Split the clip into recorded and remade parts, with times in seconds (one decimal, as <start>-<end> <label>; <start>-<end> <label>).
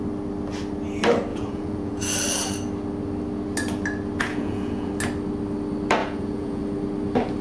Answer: 0.0-1.3 recorded; 1.3-2.0 remade; 2.0-4.3 recorded; 4.3-4.9 remade; 4.9-6.0 recorded; 6.0-6.6 remade; 6.6-7.4 recorded